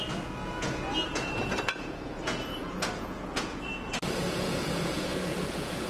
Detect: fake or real fake